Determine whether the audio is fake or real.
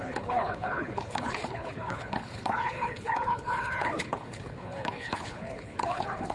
fake